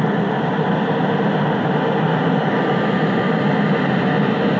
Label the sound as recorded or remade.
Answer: recorded